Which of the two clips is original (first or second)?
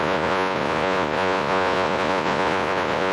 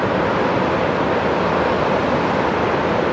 second